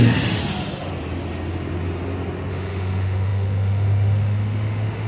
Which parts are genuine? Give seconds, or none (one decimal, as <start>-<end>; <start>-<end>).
0.4-2.5